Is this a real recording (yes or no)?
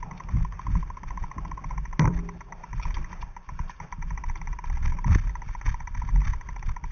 yes